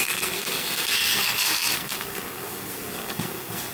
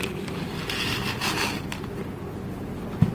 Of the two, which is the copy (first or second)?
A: first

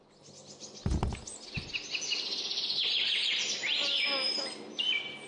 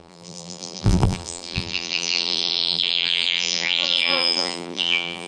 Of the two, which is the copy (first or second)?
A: second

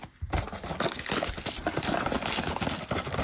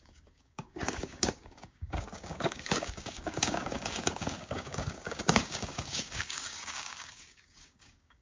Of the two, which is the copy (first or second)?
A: second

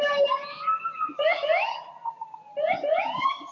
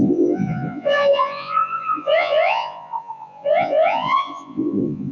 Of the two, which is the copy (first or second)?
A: second